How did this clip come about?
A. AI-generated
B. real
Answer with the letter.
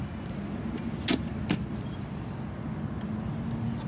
B